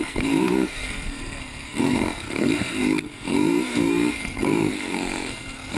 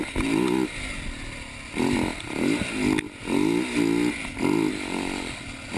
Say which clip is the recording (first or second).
second